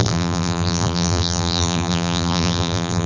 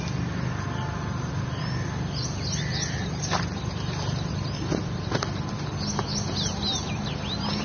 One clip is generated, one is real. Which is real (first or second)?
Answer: second